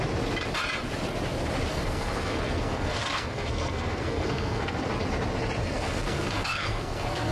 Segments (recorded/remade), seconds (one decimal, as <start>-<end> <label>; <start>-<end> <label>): 0.0-1.7 recorded; 1.7-4.9 remade; 4.9-5.6 recorded; 5.6-7.3 remade